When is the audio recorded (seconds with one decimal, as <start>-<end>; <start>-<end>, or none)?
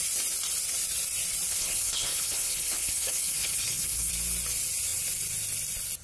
0.0-1.5; 4.1-6.0